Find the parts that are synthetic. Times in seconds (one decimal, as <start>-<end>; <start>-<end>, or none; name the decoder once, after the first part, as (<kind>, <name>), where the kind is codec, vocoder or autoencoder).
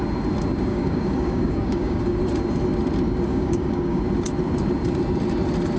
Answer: 0.7-2.2 (codec, DAC); 3.3-4.0